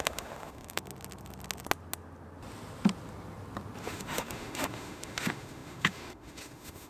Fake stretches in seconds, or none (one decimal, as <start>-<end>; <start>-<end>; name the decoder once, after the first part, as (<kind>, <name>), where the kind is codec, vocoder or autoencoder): 0.0-0.8 (autoencoder, DAC-VAE); 3.8-6.9